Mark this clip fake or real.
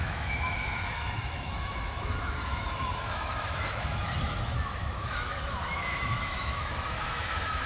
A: fake